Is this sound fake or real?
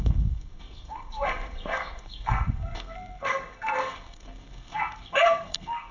fake